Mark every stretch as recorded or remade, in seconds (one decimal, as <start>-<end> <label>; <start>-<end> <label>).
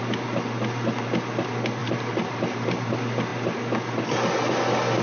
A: 0.0-1.8 recorded; 1.8-2.9 remade; 2.9-5.0 recorded